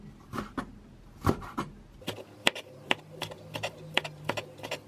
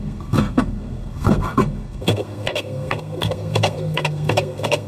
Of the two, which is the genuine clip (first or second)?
first